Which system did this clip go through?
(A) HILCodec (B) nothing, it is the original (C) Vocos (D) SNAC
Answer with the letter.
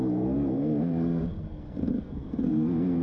D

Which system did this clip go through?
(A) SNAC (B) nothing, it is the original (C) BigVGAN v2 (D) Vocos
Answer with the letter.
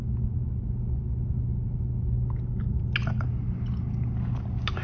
B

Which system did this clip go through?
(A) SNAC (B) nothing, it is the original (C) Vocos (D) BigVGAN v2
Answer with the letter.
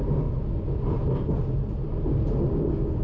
B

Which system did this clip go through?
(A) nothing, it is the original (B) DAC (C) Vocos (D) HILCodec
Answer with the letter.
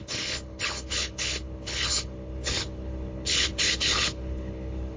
D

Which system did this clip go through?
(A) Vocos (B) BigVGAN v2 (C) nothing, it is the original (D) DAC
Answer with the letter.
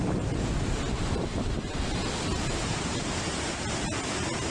C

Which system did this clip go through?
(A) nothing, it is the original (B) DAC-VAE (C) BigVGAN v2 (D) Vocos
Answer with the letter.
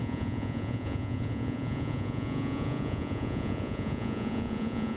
D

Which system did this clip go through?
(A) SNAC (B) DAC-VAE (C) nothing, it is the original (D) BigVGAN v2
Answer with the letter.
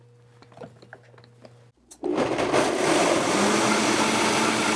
C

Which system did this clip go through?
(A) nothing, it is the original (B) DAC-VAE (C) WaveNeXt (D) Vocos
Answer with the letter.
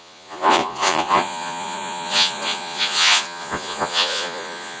D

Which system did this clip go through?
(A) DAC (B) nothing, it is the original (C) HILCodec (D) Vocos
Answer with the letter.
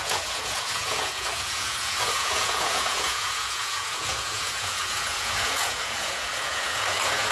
D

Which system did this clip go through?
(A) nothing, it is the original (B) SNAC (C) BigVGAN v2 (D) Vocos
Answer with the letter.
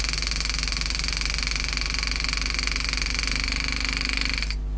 A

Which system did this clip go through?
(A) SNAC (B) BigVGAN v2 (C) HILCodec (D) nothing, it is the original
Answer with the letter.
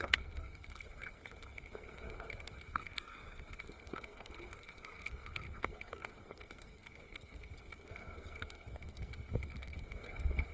A